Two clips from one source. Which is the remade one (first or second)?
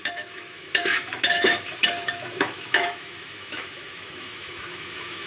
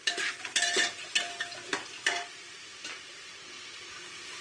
first